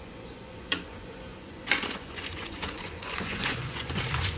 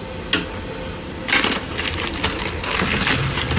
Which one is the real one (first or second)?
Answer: second